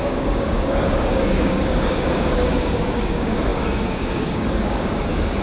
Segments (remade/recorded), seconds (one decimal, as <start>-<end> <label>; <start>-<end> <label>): 0.0-5.4 remade